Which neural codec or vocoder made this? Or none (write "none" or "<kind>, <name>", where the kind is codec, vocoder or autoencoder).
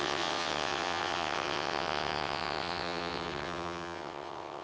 vocoder, WaveNeXt